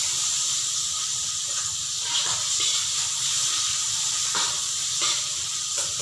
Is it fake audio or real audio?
fake